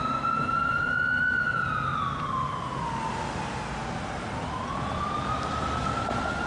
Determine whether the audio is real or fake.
real